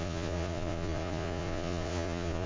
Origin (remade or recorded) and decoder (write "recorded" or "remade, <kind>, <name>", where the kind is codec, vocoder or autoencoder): remade, vocoder, Vocos